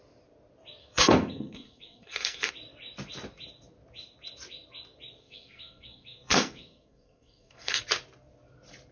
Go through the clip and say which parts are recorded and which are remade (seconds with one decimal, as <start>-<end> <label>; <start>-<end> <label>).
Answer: 0.0-0.8 recorded; 0.8-2.5 remade; 2.5-5.2 recorded; 5.2-7.8 remade; 7.8-8.9 recorded